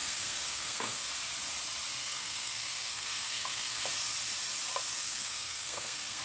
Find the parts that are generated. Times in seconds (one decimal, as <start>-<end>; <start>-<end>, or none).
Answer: 0.0-1.1; 2.0-3.8; 4.9-6.2